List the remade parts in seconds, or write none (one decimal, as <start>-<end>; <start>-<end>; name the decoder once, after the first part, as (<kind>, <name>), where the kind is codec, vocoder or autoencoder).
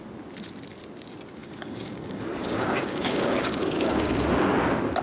1.4-4.2 (codec, DAC)